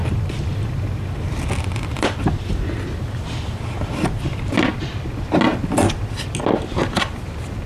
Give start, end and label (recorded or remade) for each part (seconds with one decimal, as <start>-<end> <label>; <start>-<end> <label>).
0.0-4.4 remade; 4.4-7.7 recorded